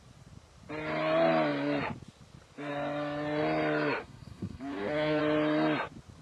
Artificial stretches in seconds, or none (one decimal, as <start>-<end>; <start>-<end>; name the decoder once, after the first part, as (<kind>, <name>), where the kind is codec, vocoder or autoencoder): 4.0-5.2 (codec, SNAC)